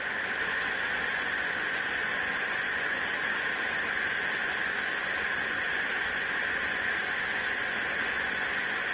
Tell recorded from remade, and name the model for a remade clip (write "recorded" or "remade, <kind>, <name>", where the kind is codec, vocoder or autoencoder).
remade, vocoder, Vocos